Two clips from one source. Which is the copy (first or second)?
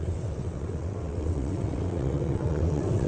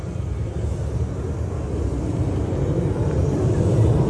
first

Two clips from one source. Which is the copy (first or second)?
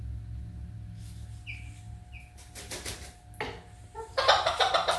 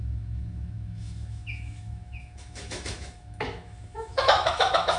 second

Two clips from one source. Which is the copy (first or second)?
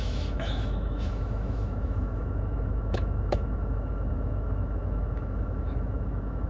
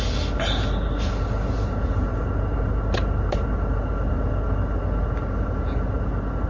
first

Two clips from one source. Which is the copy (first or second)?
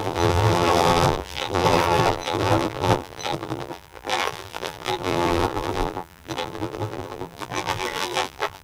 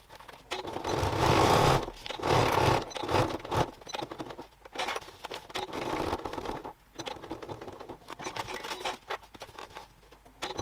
first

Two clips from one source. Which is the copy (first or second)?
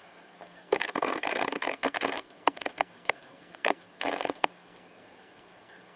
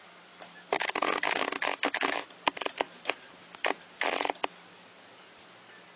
first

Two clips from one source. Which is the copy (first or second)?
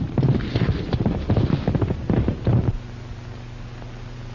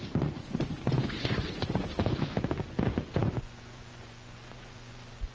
second